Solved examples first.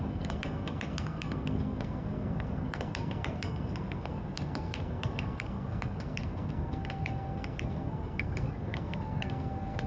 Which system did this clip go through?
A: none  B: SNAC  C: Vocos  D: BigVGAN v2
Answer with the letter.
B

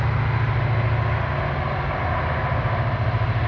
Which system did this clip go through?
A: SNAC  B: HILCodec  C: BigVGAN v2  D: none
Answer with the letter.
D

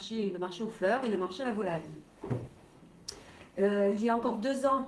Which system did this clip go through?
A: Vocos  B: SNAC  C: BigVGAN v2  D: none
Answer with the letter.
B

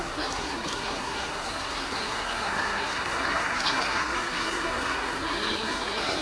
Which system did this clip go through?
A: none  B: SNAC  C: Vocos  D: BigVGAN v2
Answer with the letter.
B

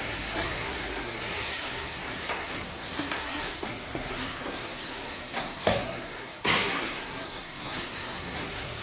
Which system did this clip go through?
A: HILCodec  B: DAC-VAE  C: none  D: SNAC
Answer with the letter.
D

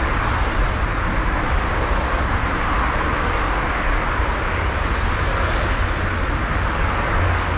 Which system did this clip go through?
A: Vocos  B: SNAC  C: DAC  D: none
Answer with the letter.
D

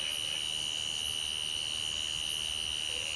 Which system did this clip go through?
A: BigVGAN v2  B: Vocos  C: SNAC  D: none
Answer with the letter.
D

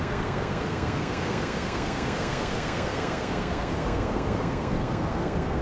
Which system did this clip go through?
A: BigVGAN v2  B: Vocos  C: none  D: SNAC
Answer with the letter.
D